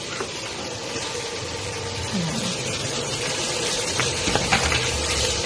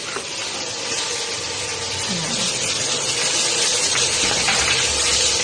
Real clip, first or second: second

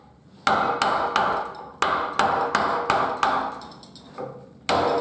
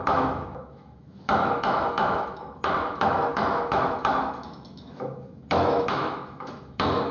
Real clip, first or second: first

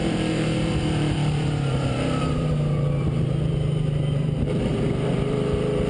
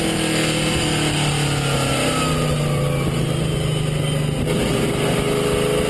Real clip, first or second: second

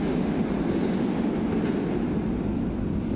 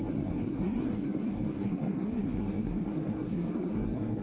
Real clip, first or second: first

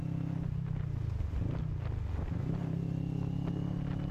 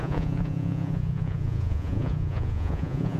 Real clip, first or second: first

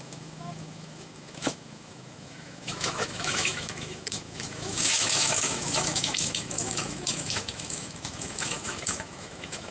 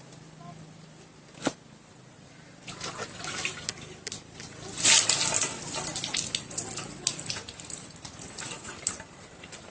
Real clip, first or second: second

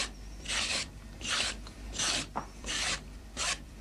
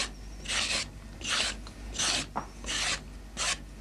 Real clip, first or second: second